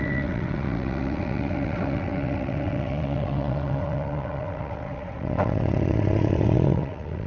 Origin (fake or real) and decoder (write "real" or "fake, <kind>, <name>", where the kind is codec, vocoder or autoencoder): fake, vocoder, WaveNeXt